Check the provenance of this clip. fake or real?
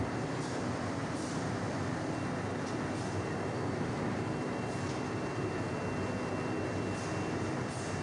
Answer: real